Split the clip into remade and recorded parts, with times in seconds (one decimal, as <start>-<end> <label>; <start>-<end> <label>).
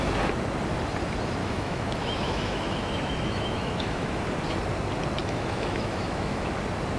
0.0-1.4 recorded; 1.4-4.2 remade; 4.2-5.2 recorded; 5.2-6.5 remade; 6.5-7.0 recorded